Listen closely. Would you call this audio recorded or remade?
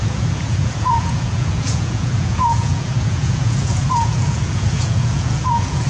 remade